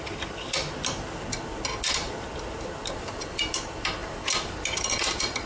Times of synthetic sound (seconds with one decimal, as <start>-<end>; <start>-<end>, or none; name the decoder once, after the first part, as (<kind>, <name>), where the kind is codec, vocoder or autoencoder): 2.0-3.4 (vocoder, BigVGAN v2); 4.0-5.0